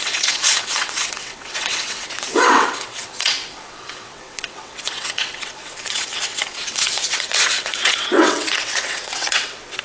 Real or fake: fake